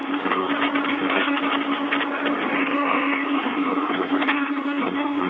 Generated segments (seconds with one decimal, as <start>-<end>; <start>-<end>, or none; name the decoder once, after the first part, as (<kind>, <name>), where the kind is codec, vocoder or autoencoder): 0.0-0.5 (codec, SNAC); 0.9-1.4; 2.6-5.3